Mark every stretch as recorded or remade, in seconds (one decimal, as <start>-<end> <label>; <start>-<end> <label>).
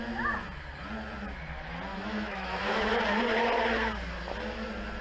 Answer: 0.0-1.9 recorded; 1.9-3.0 remade; 3.0-5.0 recorded